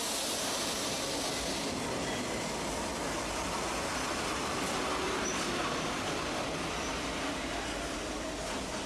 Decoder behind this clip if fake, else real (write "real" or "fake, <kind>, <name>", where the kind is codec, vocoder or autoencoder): real